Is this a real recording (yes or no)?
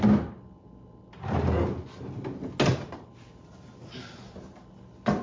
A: yes